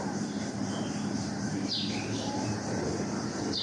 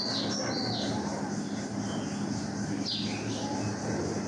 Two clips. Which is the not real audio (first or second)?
first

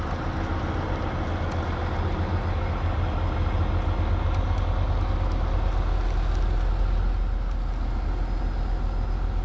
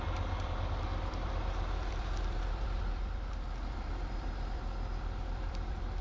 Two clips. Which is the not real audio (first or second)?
second